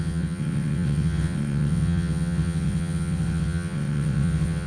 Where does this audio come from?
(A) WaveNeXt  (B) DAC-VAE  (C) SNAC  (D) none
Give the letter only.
A